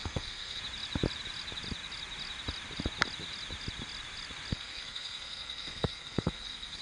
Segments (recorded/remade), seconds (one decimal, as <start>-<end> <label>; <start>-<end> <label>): 0.0-0.6 remade; 0.6-4.5 recorded; 4.5-6.8 remade

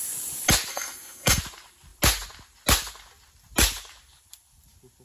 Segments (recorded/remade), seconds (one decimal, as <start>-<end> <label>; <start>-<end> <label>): 0.0-0.7 recorded; 0.7-1.4 remade; 1.4-5.0 recorded

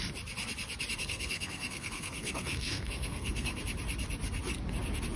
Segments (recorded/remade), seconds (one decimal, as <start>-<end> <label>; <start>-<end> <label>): 0.0-1.0 recorded; 1.0-3.6 remade; 3.6-5.2 recorded

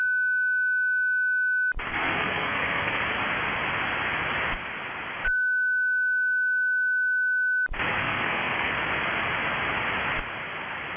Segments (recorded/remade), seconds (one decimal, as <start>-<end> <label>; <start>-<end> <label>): 0.0-1.9 recorded; 1.9-3.0 remade; 3.0-8.0 recorded; 8.0-8.7 remade; 8.7-11.0 recorded

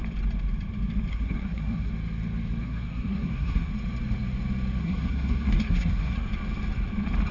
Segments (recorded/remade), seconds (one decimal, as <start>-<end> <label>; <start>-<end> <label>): 0.0-1.1 recorded; 1.1-1.9 remade; 1.9-2.6 recorded; 2.6-3.7 remade; 3.7-4.8 recorded; 4.8-6.3 remade; 6.3-7.3 recorded

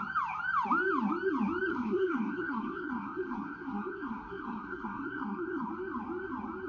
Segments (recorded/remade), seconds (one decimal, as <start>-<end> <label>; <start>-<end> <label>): 0.0-1.7 recorded; 1.7-5.7 remade; 5.7-6.7 recorded

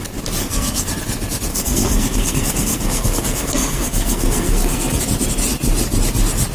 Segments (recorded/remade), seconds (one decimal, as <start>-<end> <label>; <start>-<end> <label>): 0.0-0.4 recorded; 0.4-0.9 remade; 0.9-1.5 recorded; 1.5-5.0 remade; 5.0-6.5 recorded

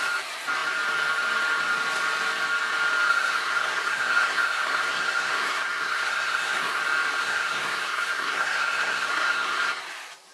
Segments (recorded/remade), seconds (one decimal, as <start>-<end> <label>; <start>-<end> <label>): 0.0-3.1 recorded; 3.1-6.8 remade; 6.8-7.2 recorded; 7.2-9.8 remade; 9.8-10.3 recorded